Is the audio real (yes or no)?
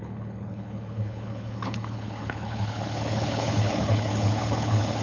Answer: no